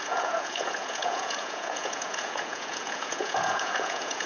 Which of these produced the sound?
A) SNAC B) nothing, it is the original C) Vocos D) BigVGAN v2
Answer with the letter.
C